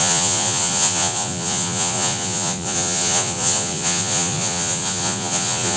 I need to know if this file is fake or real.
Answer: fake